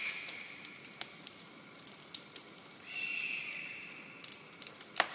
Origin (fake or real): real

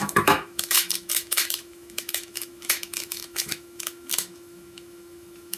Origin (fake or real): fake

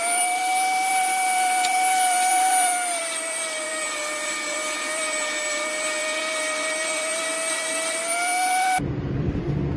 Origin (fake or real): fake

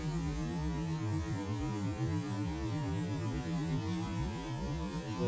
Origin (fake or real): real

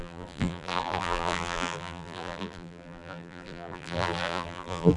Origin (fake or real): fake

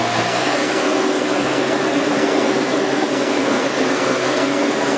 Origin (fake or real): fake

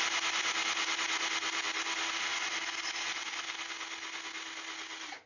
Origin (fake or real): real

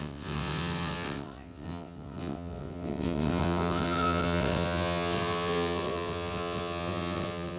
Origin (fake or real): fake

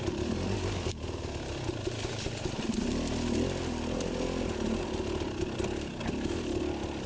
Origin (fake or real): real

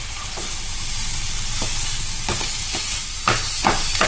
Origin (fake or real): real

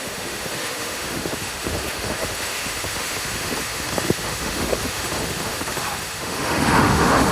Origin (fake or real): fake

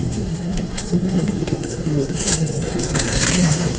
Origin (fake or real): fake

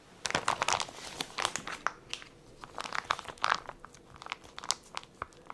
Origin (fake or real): real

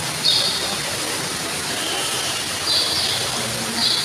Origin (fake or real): fake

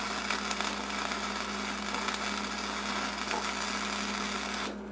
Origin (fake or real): real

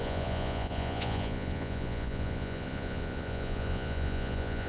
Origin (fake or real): fake